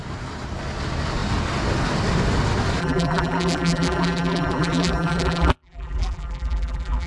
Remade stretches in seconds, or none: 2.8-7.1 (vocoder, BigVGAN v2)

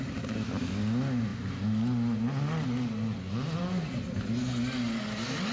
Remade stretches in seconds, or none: none

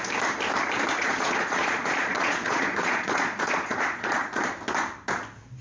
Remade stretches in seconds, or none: 1.0-4.4 (vocoder, Vocos)